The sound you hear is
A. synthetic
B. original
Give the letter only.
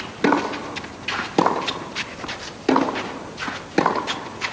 B